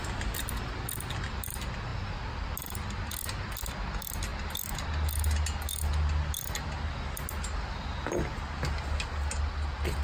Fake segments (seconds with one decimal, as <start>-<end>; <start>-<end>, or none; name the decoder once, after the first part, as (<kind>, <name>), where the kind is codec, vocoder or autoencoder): none